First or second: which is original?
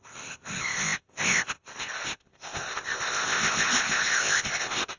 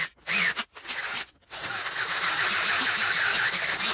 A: second